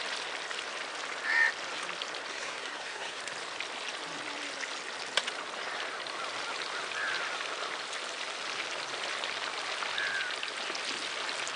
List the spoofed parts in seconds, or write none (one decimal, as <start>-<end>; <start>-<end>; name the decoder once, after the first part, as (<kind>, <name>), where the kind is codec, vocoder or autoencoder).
2.3-3.2 (codec, SNAC)